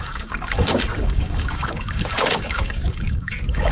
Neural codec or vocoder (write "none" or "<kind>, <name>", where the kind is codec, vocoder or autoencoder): codec, DAC